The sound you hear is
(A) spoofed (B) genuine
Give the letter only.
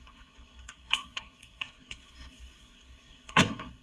A